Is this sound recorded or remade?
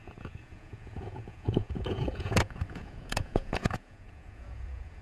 remade